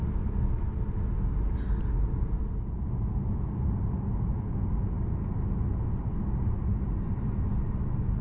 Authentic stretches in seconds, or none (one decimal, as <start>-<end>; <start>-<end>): 0.0-8.2